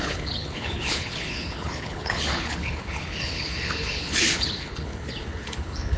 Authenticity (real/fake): fake